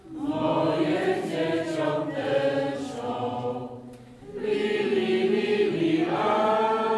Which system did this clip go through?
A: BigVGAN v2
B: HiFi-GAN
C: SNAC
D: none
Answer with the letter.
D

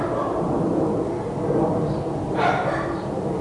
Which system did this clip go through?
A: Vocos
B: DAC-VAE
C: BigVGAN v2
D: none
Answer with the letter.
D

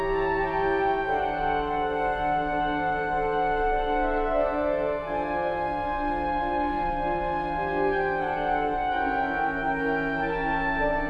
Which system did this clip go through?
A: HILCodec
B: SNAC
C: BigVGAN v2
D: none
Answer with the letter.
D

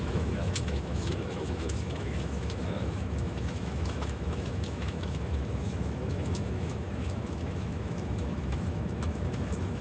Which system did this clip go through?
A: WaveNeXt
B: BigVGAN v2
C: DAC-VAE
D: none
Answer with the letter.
C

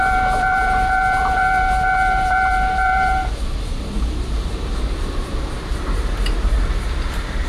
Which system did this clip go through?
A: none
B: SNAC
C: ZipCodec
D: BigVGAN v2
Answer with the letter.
D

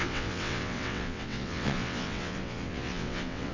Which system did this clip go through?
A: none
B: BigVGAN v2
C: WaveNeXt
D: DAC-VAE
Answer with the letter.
C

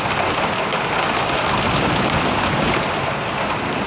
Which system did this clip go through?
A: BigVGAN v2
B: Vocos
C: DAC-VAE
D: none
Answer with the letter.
D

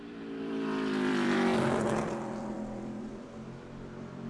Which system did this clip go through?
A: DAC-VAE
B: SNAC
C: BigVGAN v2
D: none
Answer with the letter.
C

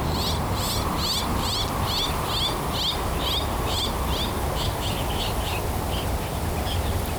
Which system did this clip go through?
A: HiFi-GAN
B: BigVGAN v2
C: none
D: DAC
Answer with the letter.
C